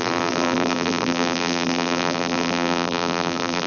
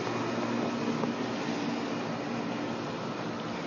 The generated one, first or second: first